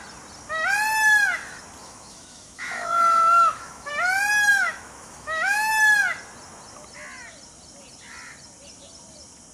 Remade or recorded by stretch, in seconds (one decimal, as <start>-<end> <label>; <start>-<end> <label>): 0.0-1.8 recorded; 1.8-3.9 remade; 3.9-4.5 recorded; 4.5-5.7 remade; 5.7-9.5 recorded